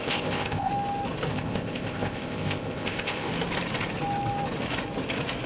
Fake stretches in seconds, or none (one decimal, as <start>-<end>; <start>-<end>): 0.0-0.7; 1.3-3.3